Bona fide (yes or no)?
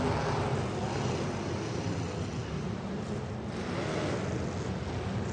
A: yes